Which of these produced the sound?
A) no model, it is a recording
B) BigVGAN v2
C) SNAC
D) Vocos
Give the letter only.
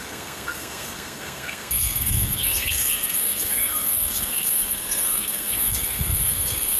C